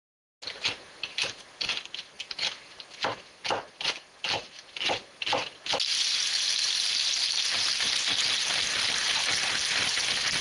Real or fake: real